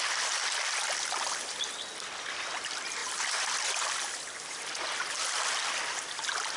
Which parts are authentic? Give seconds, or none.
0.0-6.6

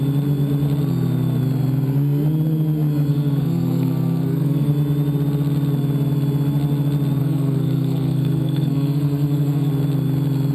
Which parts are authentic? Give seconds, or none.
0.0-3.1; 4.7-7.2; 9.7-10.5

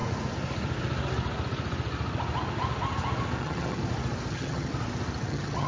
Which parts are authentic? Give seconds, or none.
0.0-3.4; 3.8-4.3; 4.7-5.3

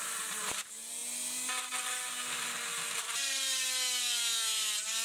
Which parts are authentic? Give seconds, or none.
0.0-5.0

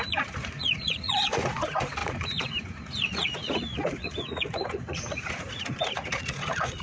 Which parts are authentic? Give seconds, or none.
none

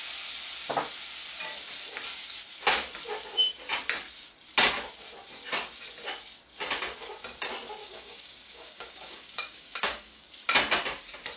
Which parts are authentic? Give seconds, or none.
0.0-7.8; 10.3-11.4

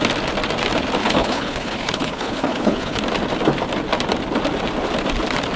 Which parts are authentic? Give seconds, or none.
0.0-1.0; 3.0-5.6

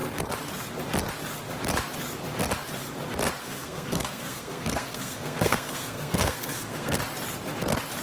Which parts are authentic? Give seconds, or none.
0.0-3.4; 7.0-8.0